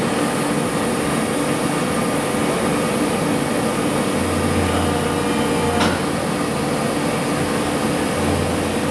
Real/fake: real